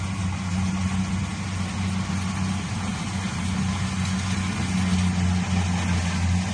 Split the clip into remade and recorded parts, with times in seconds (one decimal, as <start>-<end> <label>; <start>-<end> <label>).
0.0-6.5 recorded